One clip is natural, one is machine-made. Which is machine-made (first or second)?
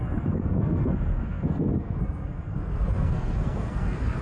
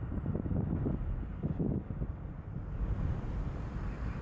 first